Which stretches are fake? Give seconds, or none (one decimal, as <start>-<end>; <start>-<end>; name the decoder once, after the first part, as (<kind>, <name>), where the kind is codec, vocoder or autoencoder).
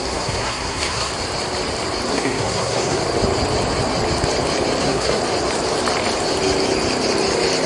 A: 0.0-1.1 (codec, SNAC); 2.1-3.0; 4.8-5.2